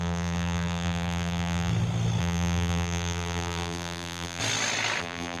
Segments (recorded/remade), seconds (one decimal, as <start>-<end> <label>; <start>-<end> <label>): 0.0-1.7 remade; 1.7-2.2 recorded; 2.2-4.4 remade; 4.4-5.0 recorded; 5.0-5.4 remade